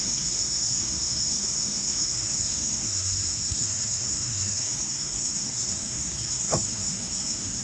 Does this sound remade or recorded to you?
remade